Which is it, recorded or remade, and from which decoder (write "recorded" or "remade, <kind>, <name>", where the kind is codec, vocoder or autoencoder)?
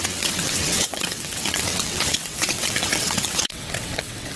remade, vocoder, WaveNeXt